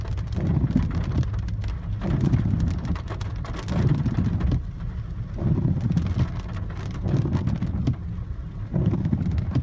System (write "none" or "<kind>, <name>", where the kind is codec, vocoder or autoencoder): none